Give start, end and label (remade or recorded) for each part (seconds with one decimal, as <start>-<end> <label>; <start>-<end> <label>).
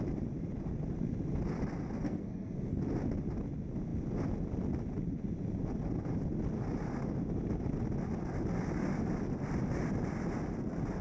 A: 0.0-2.0 recorded; 2.0-2.7 remade; 2.7-11.0 recorded